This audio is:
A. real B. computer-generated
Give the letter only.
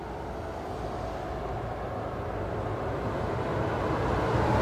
A